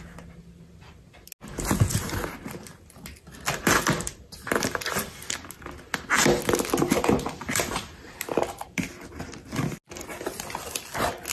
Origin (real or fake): real